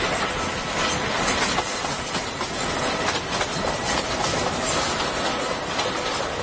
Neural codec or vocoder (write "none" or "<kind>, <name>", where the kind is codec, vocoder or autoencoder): none